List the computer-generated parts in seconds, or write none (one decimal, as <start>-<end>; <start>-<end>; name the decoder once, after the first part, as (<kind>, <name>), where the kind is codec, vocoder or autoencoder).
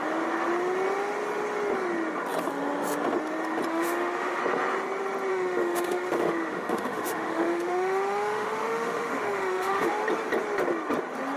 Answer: 3.7-4.4 (autoencoder, DAC-VAE); 5.3-9.9